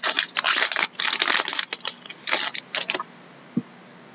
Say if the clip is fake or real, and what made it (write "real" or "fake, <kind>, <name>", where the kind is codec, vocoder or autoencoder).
real